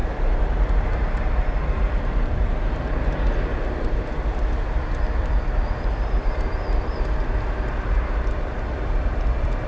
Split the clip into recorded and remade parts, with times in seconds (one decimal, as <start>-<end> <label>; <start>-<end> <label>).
0.0-2.5 remade; 2.5-5.2 recorded; 5.2-9.7 remade